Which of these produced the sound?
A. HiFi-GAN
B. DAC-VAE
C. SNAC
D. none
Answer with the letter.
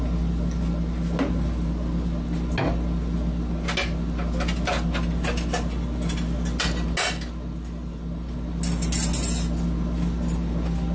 D